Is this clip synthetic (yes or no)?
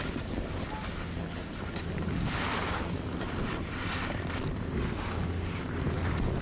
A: no